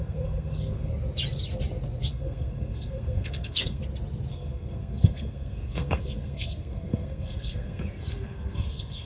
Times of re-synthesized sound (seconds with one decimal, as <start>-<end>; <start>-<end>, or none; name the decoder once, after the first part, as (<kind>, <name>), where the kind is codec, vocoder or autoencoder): 0.0-0.9 (codec, SNAC); 2.1-3.8; 4.3-9.1